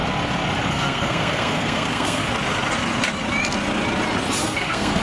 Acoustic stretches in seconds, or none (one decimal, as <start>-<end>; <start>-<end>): 0.0-0.7; 2.2-4.4